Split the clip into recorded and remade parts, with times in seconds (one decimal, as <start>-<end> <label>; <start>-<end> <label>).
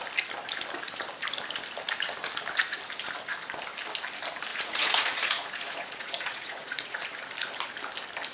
0.0-4.5 recorded; 4.5-7.0 remade; 7.0-8.3 recorded